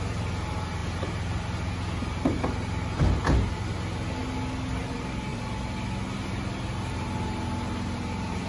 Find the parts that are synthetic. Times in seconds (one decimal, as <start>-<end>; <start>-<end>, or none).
none